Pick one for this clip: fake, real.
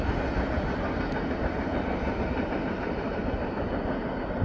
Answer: real